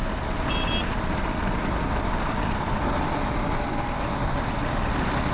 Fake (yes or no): no